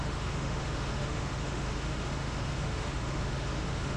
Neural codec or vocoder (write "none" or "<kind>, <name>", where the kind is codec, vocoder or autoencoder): autoencoder, DAC-VAE